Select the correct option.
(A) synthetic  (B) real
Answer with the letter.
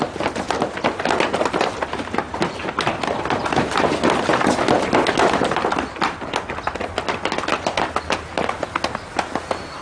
B